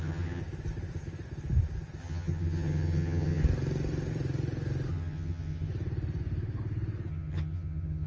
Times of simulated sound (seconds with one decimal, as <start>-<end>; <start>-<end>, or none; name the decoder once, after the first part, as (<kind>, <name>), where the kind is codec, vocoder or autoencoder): 0.0-0.4 (vocoder, HiFi-GAN); 2.0-3.4; 4.9-5.7; 7.1-8.1